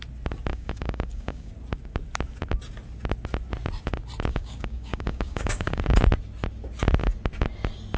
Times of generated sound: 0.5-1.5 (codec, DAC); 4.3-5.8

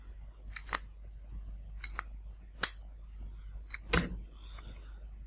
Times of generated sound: none

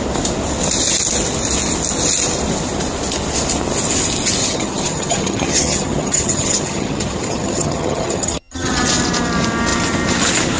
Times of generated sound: 4.4-8.9 (vocoder, HiFi-GAN)

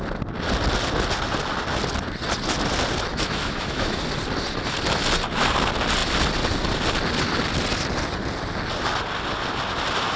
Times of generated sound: 3.1-4.0 (autoencoder, DAC-VAE)

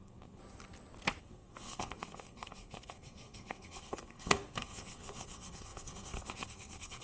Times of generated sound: 0.0-0.4 (codec, SNAC); 1.2-7.0

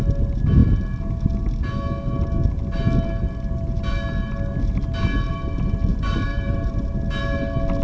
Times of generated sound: 5.9-6.9 (vocoder, BigVGAN v2)

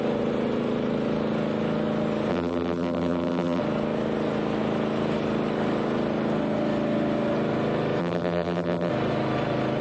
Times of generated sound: 2.3-3.6 (vocoder, BigVGAN v2); 8.0-8.9